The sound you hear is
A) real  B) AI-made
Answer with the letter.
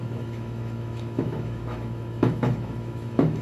B